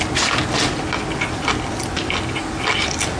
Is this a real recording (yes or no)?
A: yes